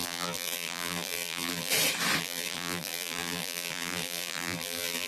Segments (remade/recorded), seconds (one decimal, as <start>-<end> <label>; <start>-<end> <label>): 0.0-1.7 remade; 1.7-2.2 recorded; 2.2-5.1 remade